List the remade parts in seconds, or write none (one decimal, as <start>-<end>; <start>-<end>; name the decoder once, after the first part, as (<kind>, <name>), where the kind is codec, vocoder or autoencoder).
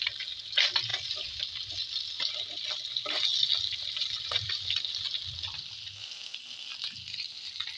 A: none